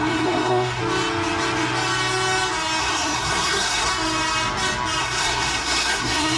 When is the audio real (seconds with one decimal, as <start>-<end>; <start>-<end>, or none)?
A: 0.8-2.8; 3.9-5.0

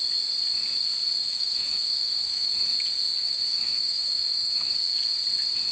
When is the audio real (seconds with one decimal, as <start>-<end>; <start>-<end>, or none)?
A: 0.0-1.2; 2.5-3.2; 4.7-5.7

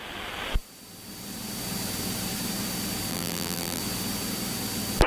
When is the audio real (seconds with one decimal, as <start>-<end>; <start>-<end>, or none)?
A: 0.0-3.1; 3.8-5.1

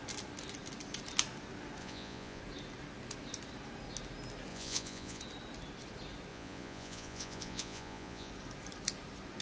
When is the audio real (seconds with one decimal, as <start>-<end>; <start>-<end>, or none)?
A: 0.0-1.8; 2.4-4.5; 5.2-6.3; 8.3-9.4

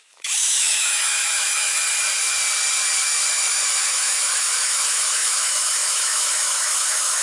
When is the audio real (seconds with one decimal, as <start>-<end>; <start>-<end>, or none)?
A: 1.7-3.3

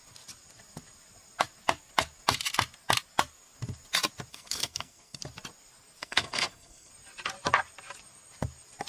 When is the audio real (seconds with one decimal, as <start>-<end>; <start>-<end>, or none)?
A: 0.0-4.3; 5.2-6.0; 6.9-8.9